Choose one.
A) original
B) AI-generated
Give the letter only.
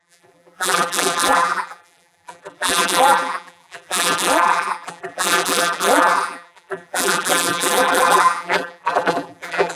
B